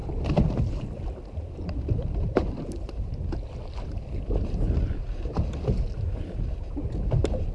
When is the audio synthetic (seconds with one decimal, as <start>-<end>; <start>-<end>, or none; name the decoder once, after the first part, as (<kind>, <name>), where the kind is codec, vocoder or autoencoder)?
none